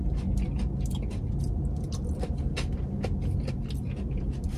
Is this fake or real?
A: real